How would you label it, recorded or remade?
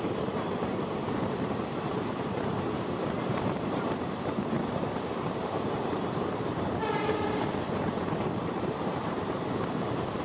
remade